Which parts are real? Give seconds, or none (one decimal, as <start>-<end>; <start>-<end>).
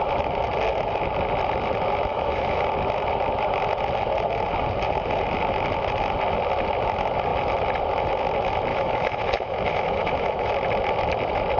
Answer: 0.0-2.1; 2.7-8.7; 10.5-11.6